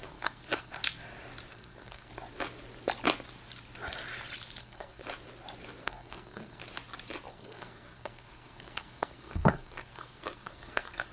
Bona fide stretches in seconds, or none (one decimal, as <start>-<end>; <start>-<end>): 0.8-1.5; 2.1-4.6; 5.0-5.8; 6.6-7.3